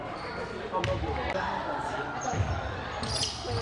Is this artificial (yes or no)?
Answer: no